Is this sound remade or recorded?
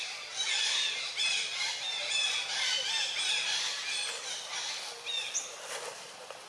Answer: recorded